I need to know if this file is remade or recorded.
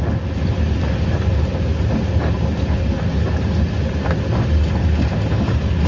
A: recorded